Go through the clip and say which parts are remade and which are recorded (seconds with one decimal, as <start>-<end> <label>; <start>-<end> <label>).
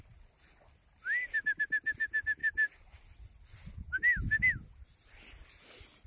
0.0-6.1 recorded